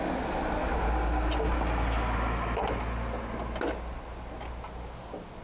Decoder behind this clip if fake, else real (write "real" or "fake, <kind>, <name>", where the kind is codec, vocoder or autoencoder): real